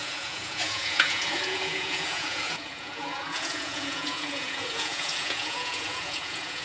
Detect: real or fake fake